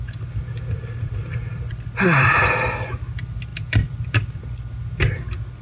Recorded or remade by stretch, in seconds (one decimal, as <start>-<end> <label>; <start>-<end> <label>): 0.0-0.5 recorded; 0.5-2.6 remade; 2.6-3.5 recorded; 3.5-4.4 remade; 4.4-5.6 recorded